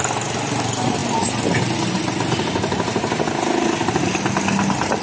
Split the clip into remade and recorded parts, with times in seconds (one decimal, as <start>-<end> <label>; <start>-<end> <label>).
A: 0.0-5.0 recorded